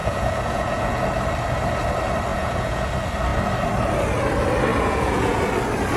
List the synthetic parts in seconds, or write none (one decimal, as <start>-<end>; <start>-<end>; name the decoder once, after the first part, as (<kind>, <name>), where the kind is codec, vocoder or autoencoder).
0.0-1.0 (vocoder, Vocos); 2.3-2.9; 4.7-5.4